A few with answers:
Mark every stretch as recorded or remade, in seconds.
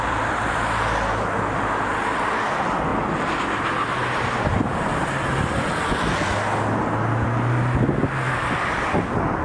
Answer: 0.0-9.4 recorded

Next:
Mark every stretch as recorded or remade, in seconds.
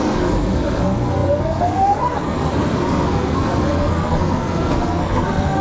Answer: 0.0-5.6 remade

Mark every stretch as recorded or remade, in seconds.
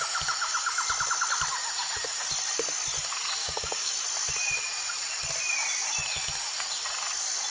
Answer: 0.0-3.4 recorded; 3.4-3.9 remade; 3.9-7.5 recorded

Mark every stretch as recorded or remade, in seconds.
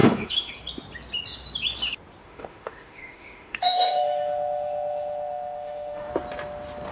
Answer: 0.0-0.5 remade; 0.5-2.2 recorded; 2.2-6.1 remade; 6.1-6.9 recorded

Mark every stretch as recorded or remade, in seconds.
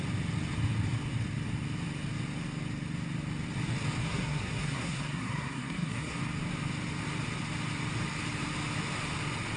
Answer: 0.0-4.0 recorded; 4.0-6.2 remade; 6.2-9.6 recorded